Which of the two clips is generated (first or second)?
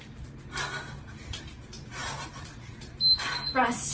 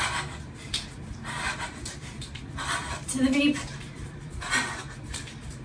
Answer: second